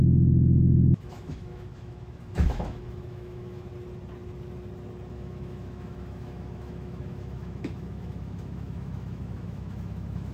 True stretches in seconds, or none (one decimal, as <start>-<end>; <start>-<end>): 3.7-5.1